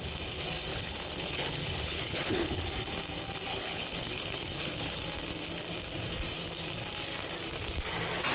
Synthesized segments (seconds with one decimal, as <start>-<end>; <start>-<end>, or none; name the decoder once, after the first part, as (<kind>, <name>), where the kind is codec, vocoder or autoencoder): 0.7-2.6 (codec, HILCodec); 3.5-5.0